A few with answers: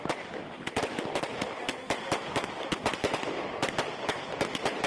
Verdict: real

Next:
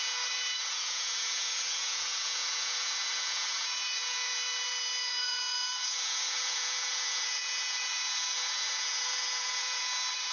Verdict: fake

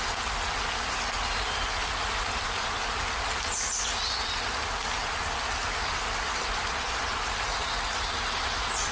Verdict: real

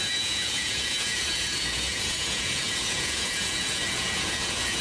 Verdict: fake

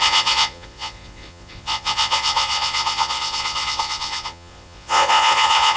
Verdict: fake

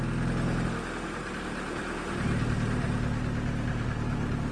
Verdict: real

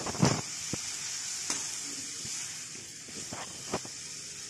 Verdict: real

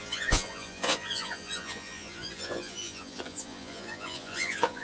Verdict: fake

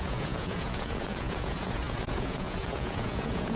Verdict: fake